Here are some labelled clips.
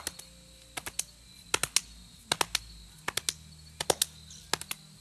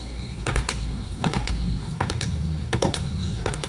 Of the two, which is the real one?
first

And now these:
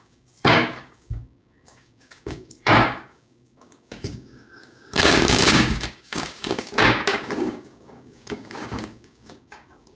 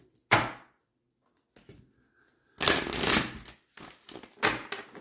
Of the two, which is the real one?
second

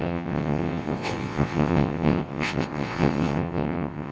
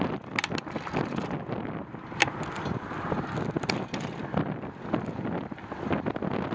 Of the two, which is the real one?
second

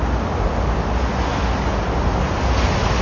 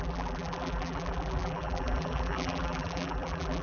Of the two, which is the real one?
first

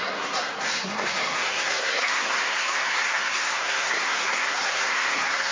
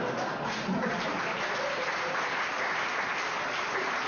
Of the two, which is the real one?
second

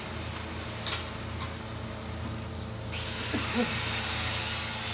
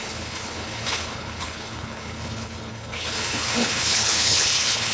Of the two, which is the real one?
first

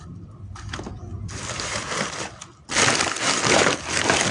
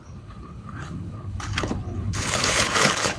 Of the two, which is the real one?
first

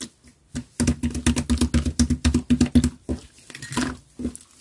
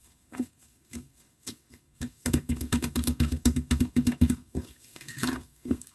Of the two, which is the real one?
first